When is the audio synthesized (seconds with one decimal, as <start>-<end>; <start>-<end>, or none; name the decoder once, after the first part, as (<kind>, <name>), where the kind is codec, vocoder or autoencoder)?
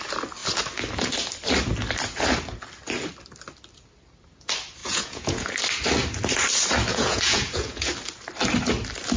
4.8-5.5 (vocoder, Vocos); 6.9-7.9